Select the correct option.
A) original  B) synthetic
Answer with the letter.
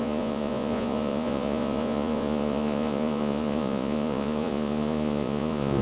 B